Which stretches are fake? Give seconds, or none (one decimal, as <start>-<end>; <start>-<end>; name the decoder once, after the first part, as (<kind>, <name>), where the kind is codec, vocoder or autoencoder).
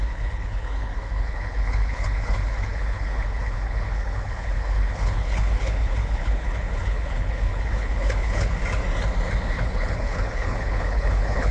0.0-8.6 (codec, HILCodec); 9.4-11.5